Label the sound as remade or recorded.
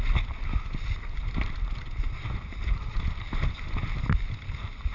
recorded